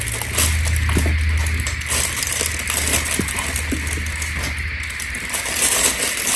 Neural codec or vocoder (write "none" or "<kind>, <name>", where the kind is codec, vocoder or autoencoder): none